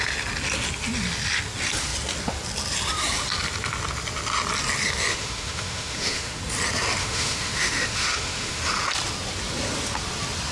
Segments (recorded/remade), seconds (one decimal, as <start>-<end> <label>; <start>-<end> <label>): 0.0-5.1 recorded; 5.1-6.4 remade; 6.4-7.0 recorded; 7.0-8.6 remade; 8.6-10.5 recorded

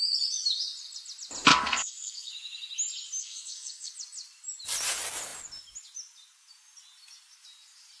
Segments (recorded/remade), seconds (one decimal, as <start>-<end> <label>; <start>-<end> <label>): 0.0-1.5 recorded; 1.5-2.3 remade; 2.3-3.2 recorded; 3.2-3.9 remade; 3.9-8.0 recorded

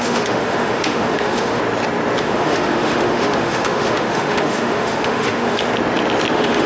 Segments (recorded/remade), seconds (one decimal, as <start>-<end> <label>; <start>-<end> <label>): 0.0-1.6 remade; 1.6-2.2 recorded; 2.2-5.7 remade; 5.7-6.3 recorded; 6.3-6.7 remade

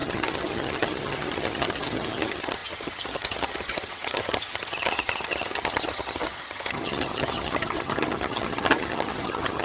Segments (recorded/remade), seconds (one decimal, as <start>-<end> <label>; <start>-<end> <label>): 0.0-9.6 remade